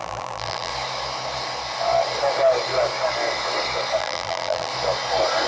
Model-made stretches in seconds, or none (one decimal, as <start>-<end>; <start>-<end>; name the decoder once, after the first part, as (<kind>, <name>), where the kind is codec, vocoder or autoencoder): 0.0-0.7 (vocoder, BigVGAN v2); 4.0-4.7